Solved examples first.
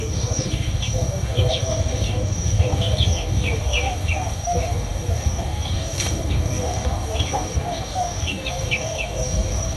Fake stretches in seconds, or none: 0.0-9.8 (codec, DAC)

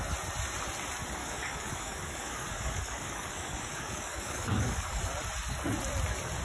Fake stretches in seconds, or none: 1.2-5.0 (codec, DAC)

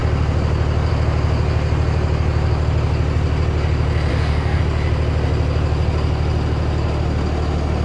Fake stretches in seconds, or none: 4.1-4.6 (codec, DAC)

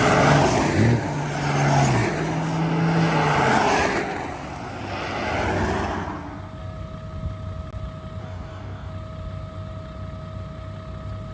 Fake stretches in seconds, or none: 8.2-8.9 (codec, DAC)

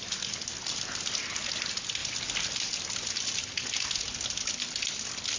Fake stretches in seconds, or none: none